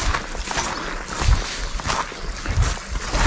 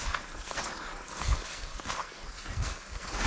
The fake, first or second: second